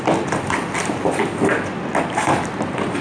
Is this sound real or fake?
fake